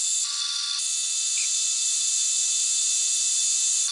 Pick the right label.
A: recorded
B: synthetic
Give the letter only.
A